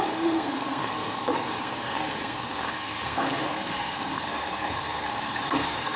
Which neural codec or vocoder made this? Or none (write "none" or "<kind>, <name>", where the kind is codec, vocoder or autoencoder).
codec, SNAC